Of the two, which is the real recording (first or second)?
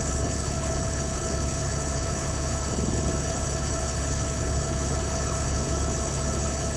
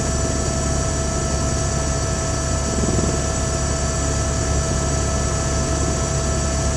second